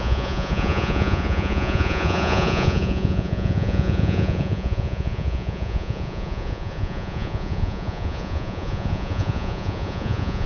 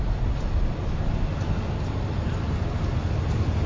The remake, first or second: first